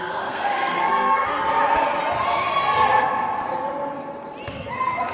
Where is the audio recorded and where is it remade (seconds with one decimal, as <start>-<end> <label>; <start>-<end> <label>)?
0.0-1.4 remade; 1.4-4.5 recorded; 4.5-5.1 remade